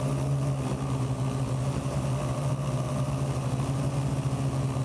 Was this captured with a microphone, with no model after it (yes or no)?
yes